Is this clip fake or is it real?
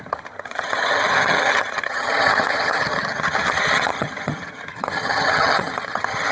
fake